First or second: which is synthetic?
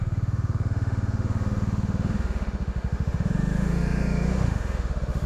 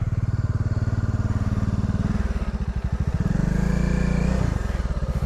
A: first